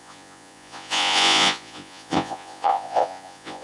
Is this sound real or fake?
fake